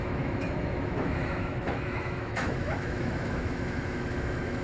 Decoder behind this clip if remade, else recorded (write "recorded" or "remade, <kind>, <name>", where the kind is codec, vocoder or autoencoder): remade, autoencoder, DAC-VAE